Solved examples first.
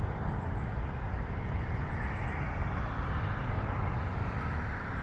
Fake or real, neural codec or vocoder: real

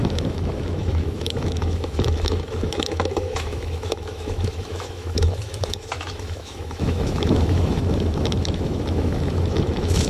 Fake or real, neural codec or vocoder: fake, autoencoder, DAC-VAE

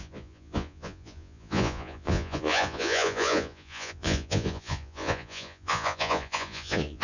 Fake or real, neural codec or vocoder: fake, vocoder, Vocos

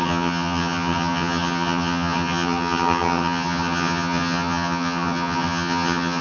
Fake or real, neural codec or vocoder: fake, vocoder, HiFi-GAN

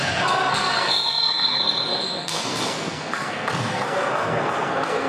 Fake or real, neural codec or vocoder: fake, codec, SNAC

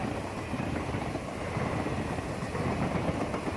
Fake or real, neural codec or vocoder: real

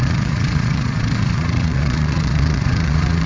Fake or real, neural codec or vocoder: fake, vocoder, Vocos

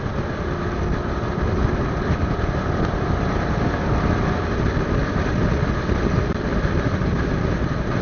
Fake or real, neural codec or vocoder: real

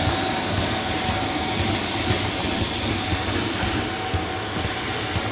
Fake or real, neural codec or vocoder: real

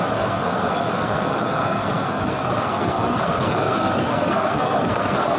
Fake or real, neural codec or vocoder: fake, codec, SNAC